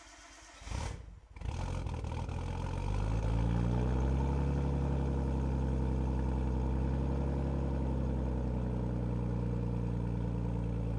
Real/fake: real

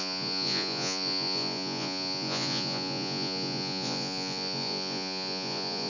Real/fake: fake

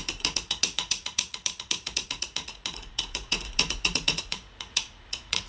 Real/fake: fake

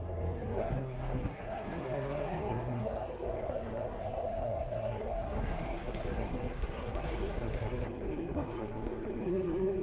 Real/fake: fake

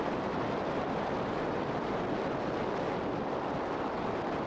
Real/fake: real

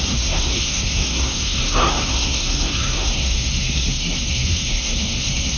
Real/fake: fake